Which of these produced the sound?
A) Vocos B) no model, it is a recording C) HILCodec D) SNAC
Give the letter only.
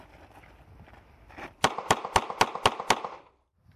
B